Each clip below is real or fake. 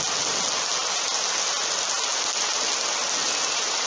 real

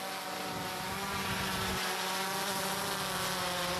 real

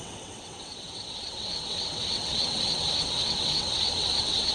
fake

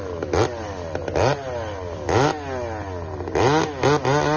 real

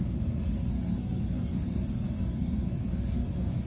fake